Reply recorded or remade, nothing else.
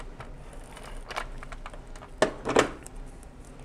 recorded